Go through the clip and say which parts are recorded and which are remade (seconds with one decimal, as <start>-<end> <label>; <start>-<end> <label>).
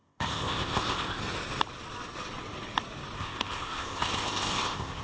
0.0-1.2 remade; 1.2-3.2 recorded; 3.2-5.0 remade